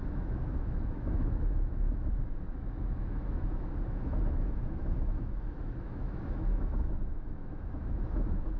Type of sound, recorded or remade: remade